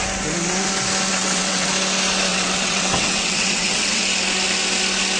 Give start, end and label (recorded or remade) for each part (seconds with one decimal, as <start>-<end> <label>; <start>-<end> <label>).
0.0-1.2 recorded; 1.2-1.7 remade; 1.7-2.3 recorded; 2.3-4.0 remade; 4.0-5.2 recorded